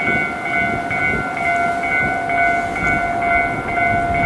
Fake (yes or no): no